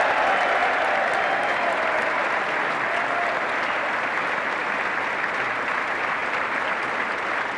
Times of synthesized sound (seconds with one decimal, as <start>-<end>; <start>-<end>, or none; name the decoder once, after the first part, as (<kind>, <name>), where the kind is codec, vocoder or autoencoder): none